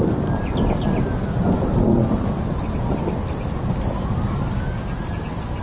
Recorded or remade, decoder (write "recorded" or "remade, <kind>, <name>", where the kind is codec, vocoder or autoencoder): recorded